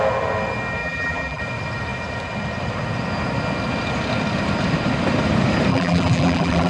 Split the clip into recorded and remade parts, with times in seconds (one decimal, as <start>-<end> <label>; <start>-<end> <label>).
0.0-0.8 recorded; 0.8-1.4 remade; 1.4-5.7 recorded; 5.7-6.7 remade